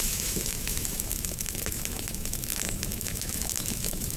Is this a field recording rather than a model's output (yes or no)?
no